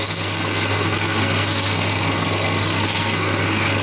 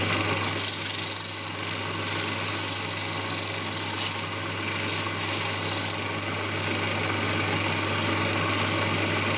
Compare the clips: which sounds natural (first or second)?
second